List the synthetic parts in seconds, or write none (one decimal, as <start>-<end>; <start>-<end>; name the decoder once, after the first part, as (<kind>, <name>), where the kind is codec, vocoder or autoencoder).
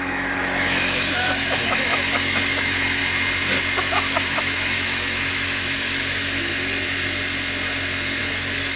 0.0-3.0 (autoencoder, DAC-VAE); 4.1-6.5; 8.2-8.8